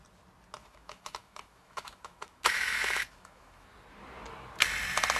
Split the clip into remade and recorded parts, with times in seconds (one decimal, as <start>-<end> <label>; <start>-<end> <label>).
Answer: 0.0-0.6 recorded; 0.6-3.7 remade; 3.7-5.2 recorded